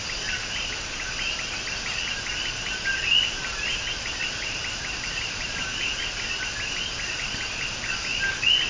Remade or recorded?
recorded